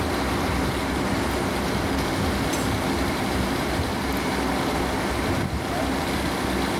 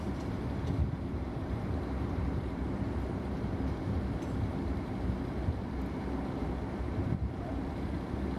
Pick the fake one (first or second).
second